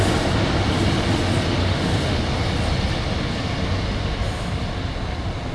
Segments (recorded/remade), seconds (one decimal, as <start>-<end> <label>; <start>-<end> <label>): 0.0-1.6 recorded; 1.6-2.2 remade; 2.2-5.5 recorded